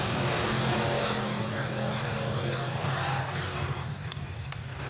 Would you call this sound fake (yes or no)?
yes